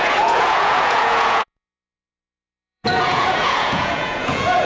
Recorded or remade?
remade